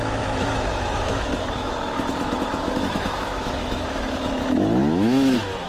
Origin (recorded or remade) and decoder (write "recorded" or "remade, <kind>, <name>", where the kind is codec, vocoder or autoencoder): remade, autoencoder, DAC-VAE